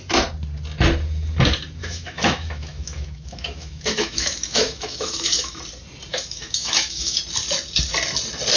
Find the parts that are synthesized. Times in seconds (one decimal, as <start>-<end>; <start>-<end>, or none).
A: 1.8-5.6; 6.1-7.2